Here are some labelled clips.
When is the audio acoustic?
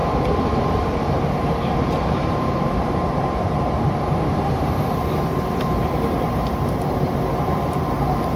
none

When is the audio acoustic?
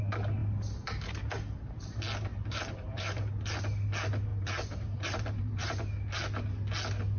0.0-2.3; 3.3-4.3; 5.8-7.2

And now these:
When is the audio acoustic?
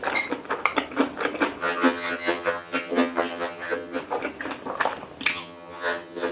0.0-1.6; 4.0-5.3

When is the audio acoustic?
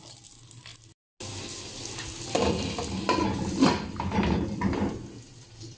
0.0-5.8